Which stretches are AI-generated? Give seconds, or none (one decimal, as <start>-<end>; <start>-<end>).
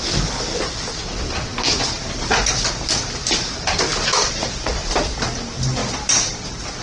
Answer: none